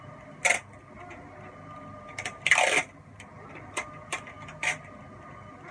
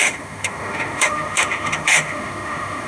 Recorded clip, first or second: first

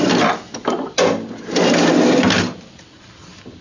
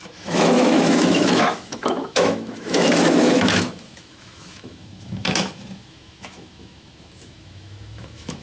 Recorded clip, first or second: first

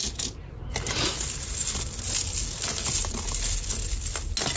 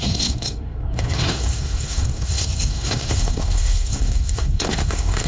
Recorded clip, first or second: first